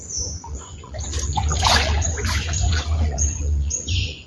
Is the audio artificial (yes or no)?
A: yes